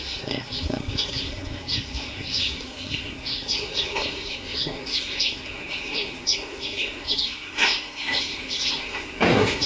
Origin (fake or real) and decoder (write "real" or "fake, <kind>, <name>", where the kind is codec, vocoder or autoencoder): fake, codec, SNAC